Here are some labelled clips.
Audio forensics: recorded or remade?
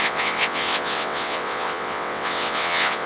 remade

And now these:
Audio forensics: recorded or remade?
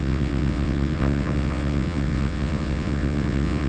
remade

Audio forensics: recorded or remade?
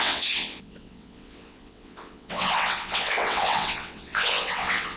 remade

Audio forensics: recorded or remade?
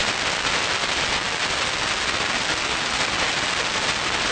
recorded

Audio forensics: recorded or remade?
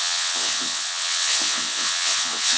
remade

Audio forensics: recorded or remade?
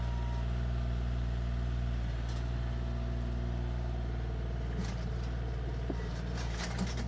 recorded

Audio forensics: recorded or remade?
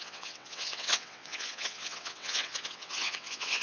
remade